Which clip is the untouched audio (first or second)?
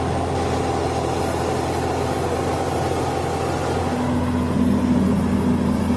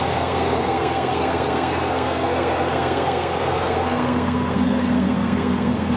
first